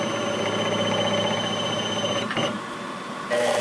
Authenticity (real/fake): real